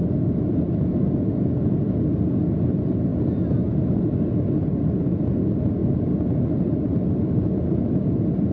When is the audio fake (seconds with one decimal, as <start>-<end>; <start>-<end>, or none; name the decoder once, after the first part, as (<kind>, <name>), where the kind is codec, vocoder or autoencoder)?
none